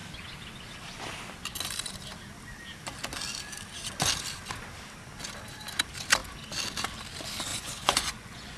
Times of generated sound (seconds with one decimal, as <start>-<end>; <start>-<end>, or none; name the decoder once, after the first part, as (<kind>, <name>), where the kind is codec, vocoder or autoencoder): 7.5-8.6 (vocoder, Vocos)